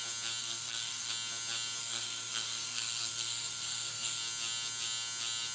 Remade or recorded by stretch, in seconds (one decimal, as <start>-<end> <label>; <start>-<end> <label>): 0.0-0.4 recorded; 0.4-1.1 remade; 1.1-1.8 recorded; 1.8-4.2 remade; 4.2-5.5 recorded